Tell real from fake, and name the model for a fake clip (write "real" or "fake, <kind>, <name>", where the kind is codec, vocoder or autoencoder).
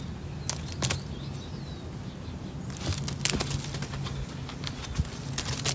real